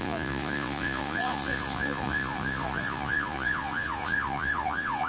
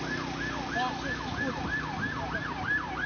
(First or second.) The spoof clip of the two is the first